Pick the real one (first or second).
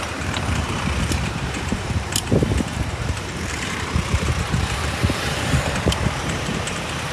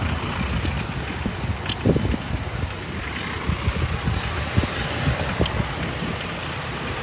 second